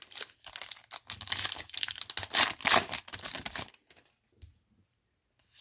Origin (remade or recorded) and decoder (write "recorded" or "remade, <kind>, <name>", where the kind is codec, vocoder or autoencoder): recorded